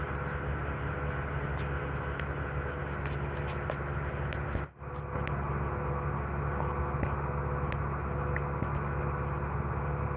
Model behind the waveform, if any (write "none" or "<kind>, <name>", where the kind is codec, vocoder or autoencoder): none